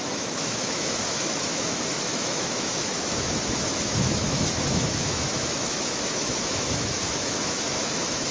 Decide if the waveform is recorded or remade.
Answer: remade